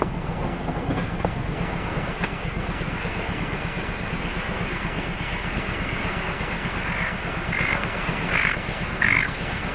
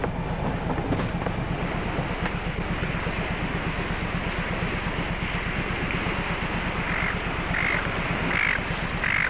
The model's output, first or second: first